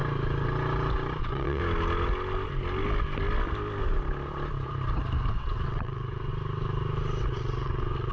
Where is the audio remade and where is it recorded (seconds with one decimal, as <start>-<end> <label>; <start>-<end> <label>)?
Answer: 0.0-1.2 recorded; 1.2-1.6 remade; 1.6-5.3 recorded; 5.3-6.3 remade; 6.3-7.2 recorded; 7.2-8.1 remade